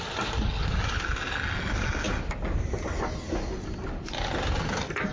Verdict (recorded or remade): recorded